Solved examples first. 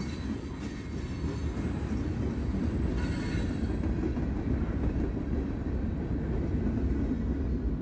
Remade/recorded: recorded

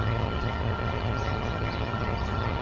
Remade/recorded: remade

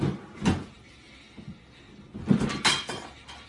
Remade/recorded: recorded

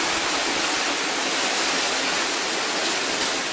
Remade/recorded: recorded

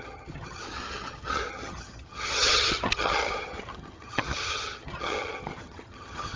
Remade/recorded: remade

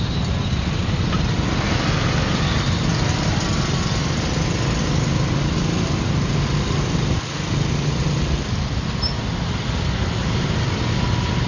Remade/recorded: recorded